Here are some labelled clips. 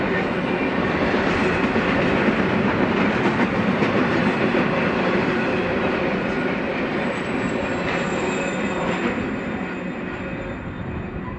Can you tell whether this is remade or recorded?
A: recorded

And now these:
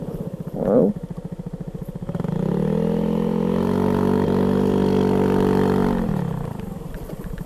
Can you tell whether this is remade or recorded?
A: recorded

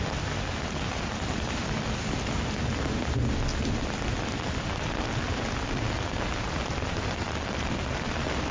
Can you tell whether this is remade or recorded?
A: recorded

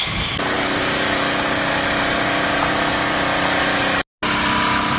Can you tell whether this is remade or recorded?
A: recorded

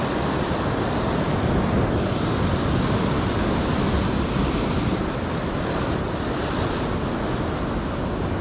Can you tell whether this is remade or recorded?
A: recorded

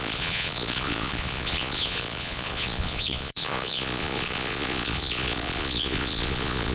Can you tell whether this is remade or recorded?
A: remade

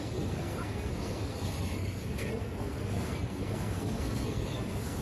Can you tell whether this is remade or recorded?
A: remade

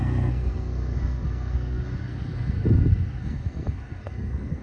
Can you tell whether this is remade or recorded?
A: remade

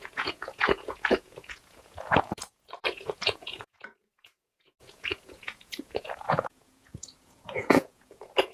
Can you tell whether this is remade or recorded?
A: remade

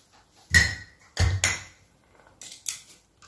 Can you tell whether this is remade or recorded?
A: recorded